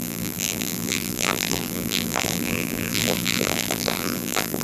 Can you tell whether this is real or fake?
fake